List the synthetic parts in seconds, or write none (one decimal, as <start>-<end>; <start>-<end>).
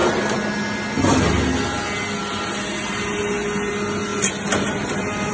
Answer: none